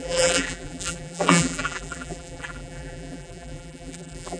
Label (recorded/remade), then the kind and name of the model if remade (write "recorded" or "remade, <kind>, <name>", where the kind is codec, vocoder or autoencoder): remade, vocoder, BigVGAN v2